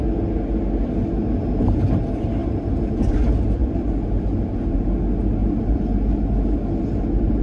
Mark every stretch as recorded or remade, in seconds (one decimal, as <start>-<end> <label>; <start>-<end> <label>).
0.0-5.4 recorded; 5.4-7.4 remade